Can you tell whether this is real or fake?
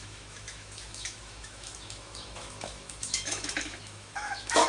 fake